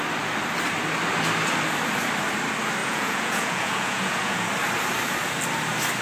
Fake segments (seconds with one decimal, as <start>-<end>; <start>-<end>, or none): 2.8-4.5